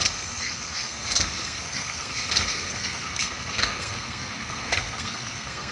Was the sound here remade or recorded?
remade